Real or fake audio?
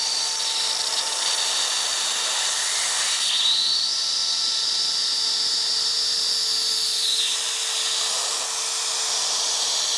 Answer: real